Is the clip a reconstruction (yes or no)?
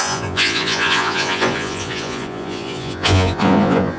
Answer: yes